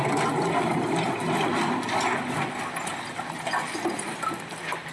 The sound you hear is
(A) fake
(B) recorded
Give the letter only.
B